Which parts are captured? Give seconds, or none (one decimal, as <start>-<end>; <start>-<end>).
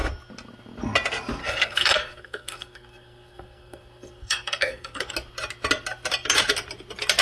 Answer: 0.0-1.4; 5.1-7.2